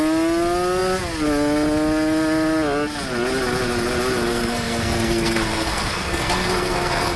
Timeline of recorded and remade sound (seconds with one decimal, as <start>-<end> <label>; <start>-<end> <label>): 0.0-4.3 recorded; 4.3-7.2 remade